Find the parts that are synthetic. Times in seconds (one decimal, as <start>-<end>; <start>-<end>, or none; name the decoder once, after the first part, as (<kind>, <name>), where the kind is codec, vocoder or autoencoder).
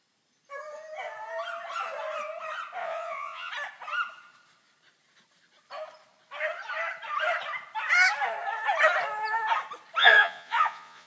2.8-3.5 (vocoder, Vocos); 10.0-11.1